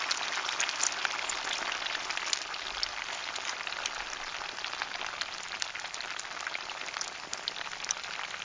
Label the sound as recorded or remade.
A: recorded